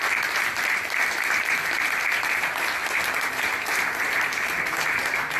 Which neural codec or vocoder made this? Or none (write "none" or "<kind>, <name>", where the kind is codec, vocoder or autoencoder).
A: none